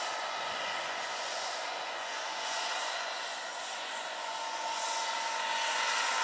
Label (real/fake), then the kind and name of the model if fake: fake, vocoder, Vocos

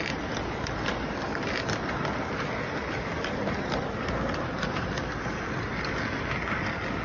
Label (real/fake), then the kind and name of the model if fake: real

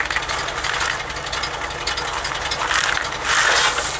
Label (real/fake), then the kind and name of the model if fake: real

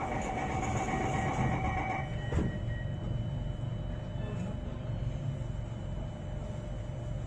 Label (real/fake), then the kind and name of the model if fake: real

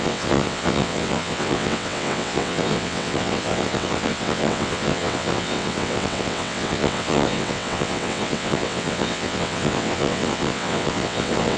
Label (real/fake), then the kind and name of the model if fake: fake, vocoder, WaveNeXt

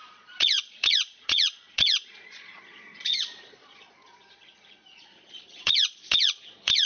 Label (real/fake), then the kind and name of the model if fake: fake, vocoder, Vocos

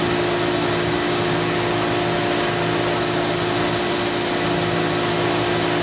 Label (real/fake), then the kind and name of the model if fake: real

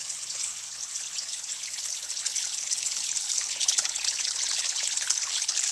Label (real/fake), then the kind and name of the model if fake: fake, codec, HILCodec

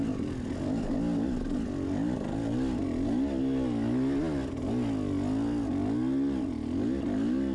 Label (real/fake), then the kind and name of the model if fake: real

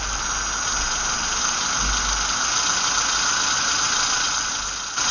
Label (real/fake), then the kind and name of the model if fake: real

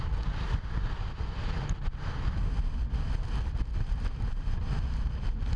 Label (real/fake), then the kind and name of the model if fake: fake, vocoder, BigVGAN v2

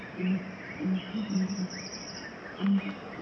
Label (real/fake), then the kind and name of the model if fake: fake, vocoder, BigVGAN v2